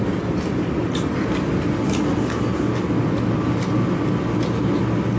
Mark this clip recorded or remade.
recorded